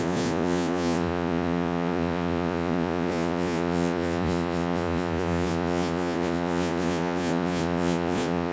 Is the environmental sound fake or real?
fake